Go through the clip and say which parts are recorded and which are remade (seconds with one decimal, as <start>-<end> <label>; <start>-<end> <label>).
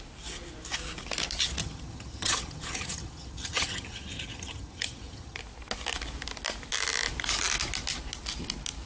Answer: 0.0-1.6 recorded; 1.6-5.4 remade; 5.4-8.9 recorded